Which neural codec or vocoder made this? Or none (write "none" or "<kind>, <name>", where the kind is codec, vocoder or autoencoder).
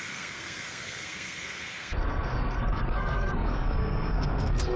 codec, SNAC